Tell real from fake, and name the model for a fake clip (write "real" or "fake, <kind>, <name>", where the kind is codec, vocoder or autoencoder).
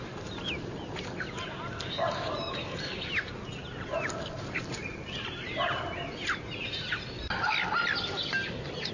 real